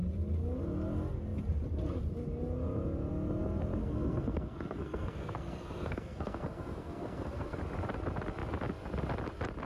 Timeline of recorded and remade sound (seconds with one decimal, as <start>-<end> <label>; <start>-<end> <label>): 0.0-3.8 recorded; 3.8-7.6 remade; 7.6-9.6 recorded